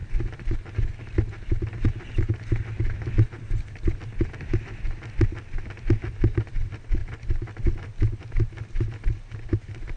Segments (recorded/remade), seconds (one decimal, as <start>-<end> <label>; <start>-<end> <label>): 0.0-10.0 recorded